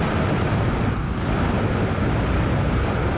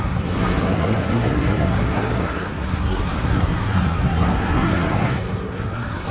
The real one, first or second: first